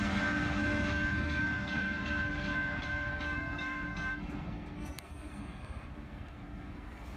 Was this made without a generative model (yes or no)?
no